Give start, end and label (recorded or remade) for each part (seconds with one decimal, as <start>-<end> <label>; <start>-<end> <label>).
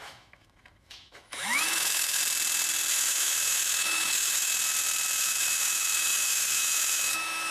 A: 0.0-2.2 remade; 2.2-2.9 recorded; 2.9-4.5 remade; 4.5-5.2 recorded; 5.2-7.5 remade